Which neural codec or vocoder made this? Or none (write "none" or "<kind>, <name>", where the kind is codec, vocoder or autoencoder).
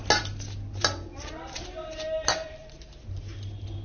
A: none